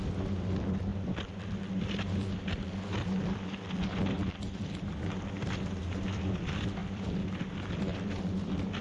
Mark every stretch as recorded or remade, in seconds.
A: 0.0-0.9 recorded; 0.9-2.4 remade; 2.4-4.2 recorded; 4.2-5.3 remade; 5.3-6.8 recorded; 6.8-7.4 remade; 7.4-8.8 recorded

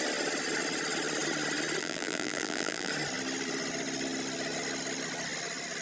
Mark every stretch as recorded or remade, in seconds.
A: 0.0-1.8 recorded; 1.8-2.9 remade; 2.9-5.8 recorded

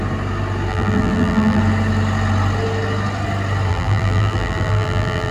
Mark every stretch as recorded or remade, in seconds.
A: 0.0-0.7 recorded; 0.7-1.6 remade; 1.6-3.7 recorded; 3.7-5.3 remade

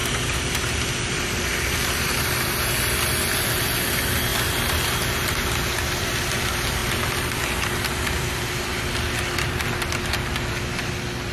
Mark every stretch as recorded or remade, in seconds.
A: 0.0-2.4 remade; 2.4-4.3 recorded; 4.3-5.5 remade; 5.5-6.8 recorded; 6.8-7.3 remade; 7.3-11.3 recorded